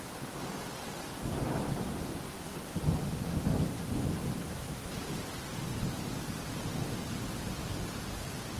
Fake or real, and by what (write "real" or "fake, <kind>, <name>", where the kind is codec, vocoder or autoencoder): real